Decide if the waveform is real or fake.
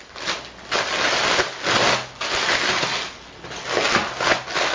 real